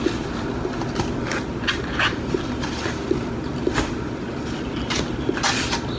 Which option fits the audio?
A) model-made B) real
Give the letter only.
B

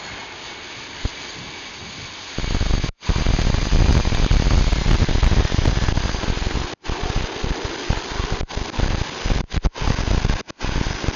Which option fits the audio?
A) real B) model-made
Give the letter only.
A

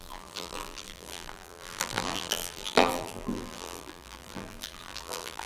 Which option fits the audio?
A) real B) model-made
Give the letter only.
B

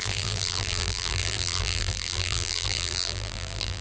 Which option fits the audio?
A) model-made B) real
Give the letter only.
A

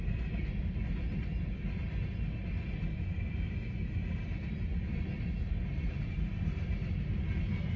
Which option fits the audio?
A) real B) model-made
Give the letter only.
A